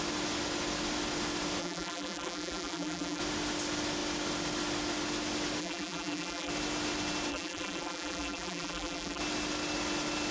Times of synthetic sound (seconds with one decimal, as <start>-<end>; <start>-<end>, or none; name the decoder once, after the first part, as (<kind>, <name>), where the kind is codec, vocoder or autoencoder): 1.6-3.2 (vocoder, BigVGAN v2); 5.6-6.5; 7.3-9.2